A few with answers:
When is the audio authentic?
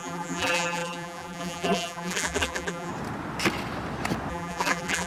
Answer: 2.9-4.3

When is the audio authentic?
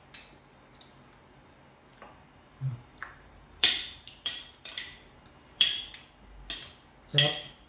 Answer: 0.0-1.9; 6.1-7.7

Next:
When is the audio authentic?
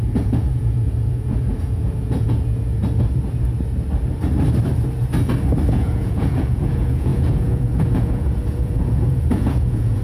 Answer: 2.8-5.7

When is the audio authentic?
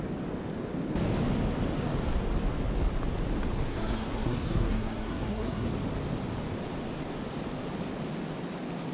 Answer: 0.0-3.7; 5.7-8.9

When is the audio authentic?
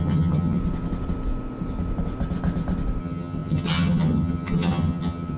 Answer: 0.6-3.0